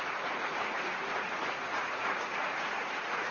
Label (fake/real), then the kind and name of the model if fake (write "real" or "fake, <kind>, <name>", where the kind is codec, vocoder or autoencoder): fake, vocoder, Vocos